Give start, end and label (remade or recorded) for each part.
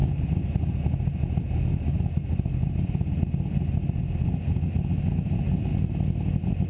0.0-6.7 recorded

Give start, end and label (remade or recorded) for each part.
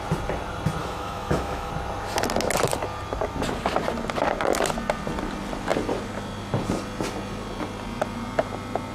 0.0-0.8 recorded; 0.8-1.7 remade; 1.7-8.9 recorded